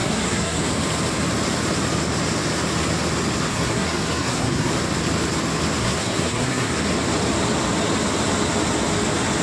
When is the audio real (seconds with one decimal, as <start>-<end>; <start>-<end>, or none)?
0.6-3.5; 4.7-5.8; 6.7-9.4